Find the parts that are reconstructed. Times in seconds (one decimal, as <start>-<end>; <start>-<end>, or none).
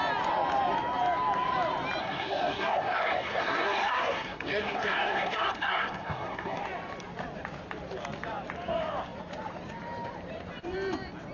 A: 2.0-6.6